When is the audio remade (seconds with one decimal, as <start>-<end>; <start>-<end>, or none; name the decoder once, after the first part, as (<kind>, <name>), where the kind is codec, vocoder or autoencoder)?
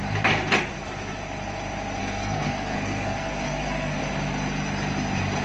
2.0-4.0 (codec, SNAC)